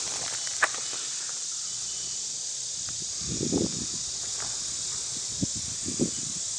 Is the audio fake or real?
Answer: fake